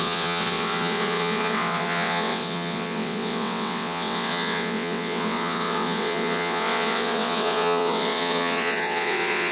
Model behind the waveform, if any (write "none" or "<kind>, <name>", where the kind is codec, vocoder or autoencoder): vocoder, WaveNeXt